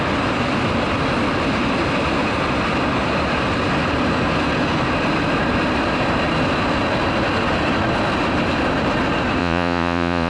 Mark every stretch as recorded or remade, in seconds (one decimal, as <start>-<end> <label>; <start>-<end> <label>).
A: 0.0-9.4 recorded; 9.4-10.3 remade